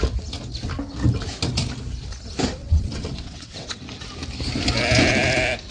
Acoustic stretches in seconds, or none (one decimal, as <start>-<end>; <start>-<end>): 0.0-2.6; 3.8-5.7